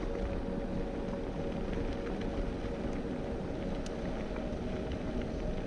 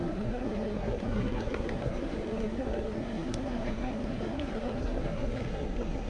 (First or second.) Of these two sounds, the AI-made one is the second